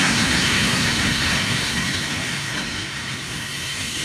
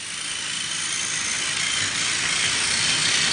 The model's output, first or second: first